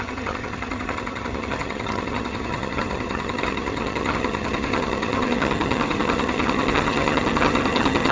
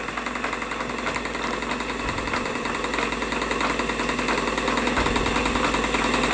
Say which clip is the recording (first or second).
second